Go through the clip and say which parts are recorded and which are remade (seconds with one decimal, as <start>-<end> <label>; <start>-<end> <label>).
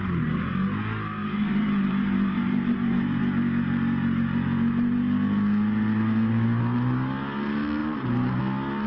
0.0-1.2 recorded; 1.2-3.2 remade; 3.2-7.8 recorded; 7.8-8.4 remade; 8.4-8.9 recorded